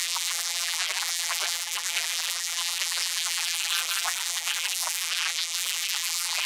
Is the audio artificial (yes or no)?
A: yes